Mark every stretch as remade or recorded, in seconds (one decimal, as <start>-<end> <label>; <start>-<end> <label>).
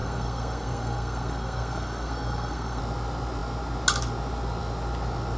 0.0-2.8 remade; 2.8-5.4 recorded